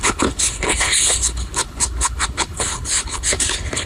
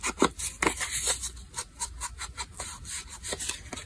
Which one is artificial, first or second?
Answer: first